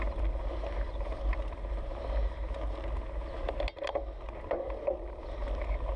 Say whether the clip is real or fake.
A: real